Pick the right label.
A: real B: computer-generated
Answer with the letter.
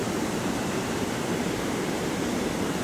B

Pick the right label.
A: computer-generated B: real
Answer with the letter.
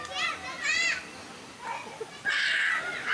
B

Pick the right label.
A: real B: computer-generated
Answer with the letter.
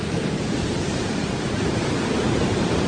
A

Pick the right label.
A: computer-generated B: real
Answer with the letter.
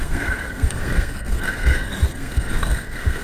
A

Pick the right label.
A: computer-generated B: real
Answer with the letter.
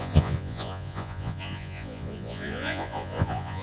A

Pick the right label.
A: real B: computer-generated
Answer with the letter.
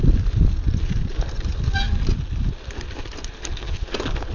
A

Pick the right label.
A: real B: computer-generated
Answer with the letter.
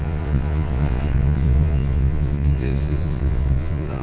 B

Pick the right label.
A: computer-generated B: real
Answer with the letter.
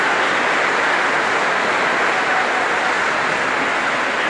B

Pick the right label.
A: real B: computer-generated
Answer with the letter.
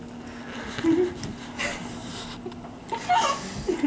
A